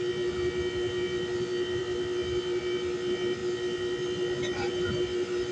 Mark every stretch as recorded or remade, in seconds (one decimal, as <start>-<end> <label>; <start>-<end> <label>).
0.0-5.5 recorded